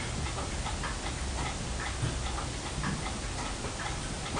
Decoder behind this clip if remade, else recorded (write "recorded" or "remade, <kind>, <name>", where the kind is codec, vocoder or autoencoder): recorded